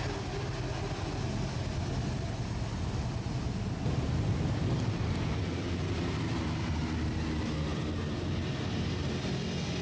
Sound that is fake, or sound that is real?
real